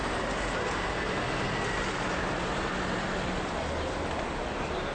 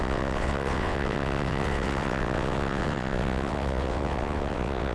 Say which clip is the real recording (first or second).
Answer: first